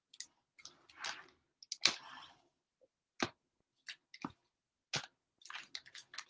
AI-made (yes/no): no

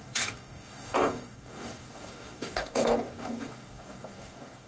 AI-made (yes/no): yes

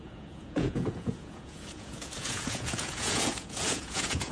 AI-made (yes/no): yes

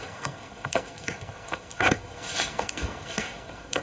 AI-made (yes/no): yes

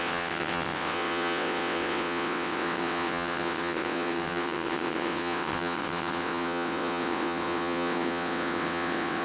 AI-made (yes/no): yes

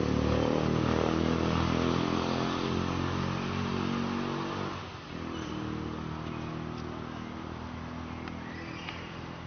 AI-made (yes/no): no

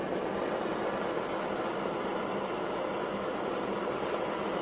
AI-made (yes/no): no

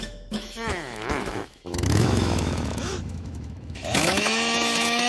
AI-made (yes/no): yes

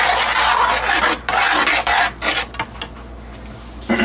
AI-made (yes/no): no